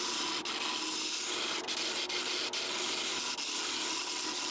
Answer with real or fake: real